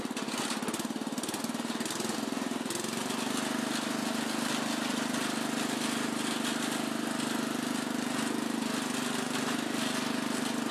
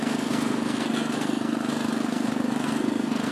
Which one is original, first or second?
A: first